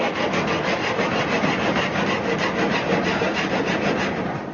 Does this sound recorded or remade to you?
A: recorded